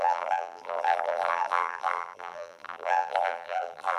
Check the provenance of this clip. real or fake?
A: fake